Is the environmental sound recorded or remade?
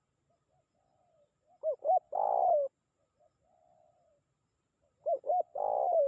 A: recorded